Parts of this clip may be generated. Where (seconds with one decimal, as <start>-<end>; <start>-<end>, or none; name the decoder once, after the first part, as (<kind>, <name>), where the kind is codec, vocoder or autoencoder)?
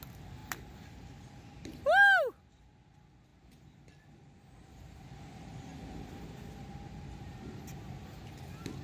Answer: none